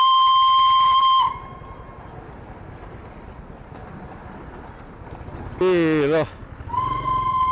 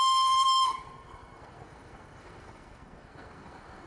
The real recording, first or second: first